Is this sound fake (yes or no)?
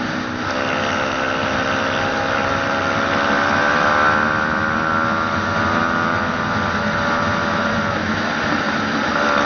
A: no